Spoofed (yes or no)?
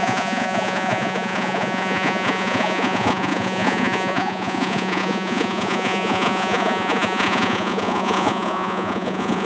yes